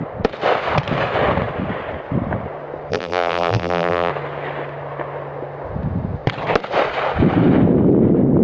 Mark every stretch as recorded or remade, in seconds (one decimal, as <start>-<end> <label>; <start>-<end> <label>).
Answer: 0.0-2.9 recorded; 2.9-4.1 remade; 4.1-8.4 recorded